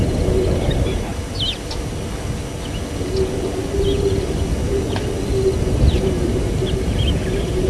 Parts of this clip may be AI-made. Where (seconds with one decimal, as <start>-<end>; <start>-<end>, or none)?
0.0-1.1; 5.7-7.7